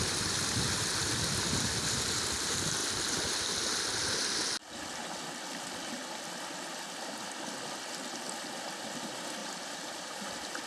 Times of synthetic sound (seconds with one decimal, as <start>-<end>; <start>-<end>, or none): 9.4-10.2